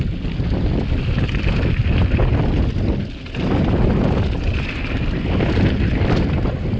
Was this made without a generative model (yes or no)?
yes